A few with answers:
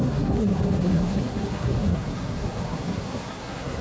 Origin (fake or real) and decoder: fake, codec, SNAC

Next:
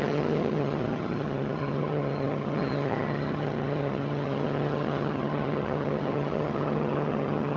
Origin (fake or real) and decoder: fake, vocoder, HiFi-GAN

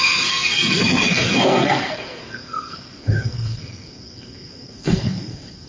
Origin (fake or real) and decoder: fake, codec, SNAC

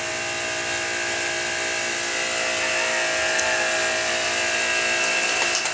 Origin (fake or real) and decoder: real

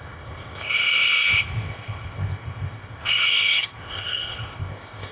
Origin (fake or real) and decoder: fake, codec, ZipCodec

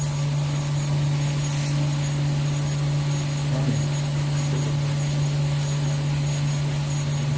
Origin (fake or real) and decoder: real